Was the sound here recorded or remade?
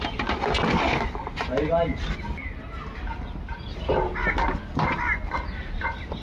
recorded